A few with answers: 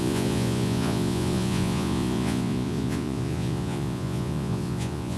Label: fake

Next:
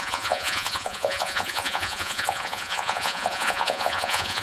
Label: fake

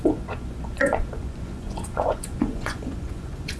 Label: fake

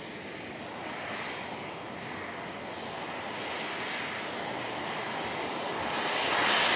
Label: real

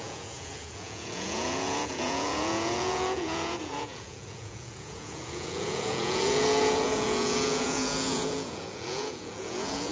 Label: fake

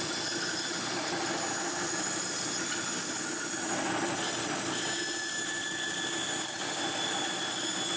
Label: real